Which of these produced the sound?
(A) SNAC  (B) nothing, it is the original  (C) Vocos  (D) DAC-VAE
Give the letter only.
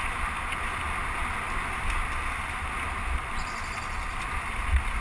B